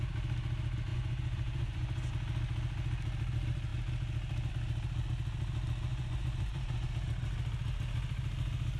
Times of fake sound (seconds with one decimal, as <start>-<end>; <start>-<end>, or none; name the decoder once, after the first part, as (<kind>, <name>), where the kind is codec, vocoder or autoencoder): 0.9-2.1 (vocoder, Vocos); 5.9-6.9